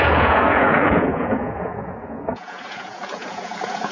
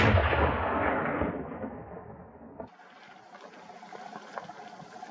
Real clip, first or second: second